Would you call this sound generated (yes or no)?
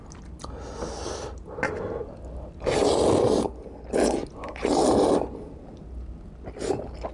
no